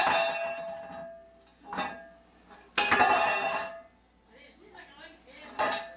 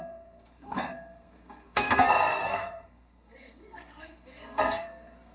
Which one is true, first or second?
first